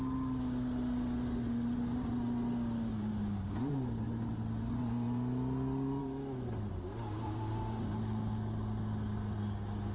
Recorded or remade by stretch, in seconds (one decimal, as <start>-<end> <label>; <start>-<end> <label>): 0.0-6.0 recorded; 6.0-6.7 remade; 6.7-9.9 recorded

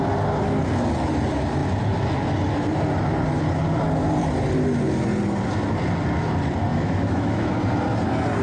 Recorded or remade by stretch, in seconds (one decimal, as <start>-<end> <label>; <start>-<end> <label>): 0.0-6.7 recorded; 6.7-7.5 remade; 7.5-8.4 recorded